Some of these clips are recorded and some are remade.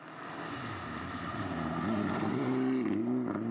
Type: recorded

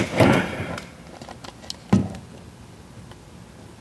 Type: recorded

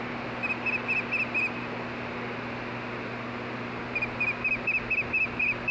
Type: recorded